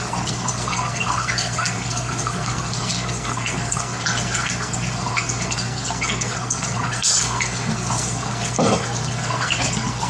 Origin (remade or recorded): remade